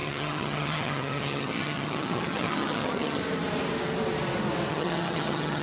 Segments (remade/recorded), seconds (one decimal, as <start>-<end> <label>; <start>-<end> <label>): 0.0-3.2 remade; 3.2-4.7 recorded; 4.7-5.6 remade